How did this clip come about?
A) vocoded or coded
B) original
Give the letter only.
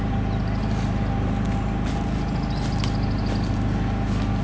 B